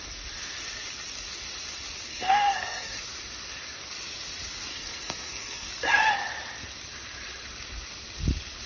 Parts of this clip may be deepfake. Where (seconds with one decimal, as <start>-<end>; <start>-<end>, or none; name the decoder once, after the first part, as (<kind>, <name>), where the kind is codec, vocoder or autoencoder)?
2.1-3.0 (codec, SNAC); 4.7-5.7